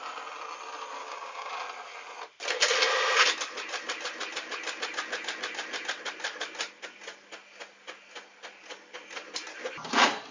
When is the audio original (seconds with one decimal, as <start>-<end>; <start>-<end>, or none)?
0.0-1.0; 1.5-10.3